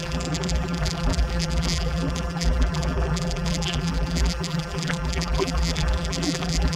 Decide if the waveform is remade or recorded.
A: remade